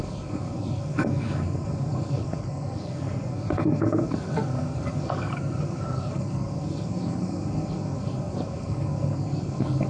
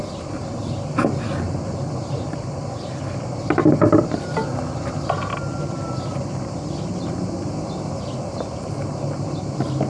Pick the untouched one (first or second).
second